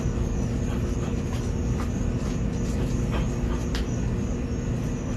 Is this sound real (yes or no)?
yes